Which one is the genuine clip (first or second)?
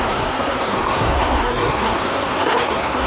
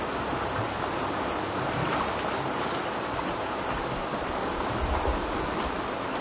second